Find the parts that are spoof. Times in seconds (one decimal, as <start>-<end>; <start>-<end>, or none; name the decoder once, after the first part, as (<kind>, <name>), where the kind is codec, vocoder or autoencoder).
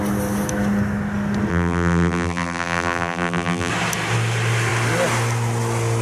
1.5-3.7 (vocoder, BigVGAN v2)